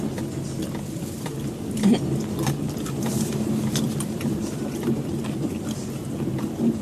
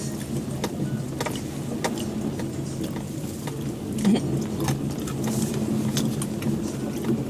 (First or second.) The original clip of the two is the second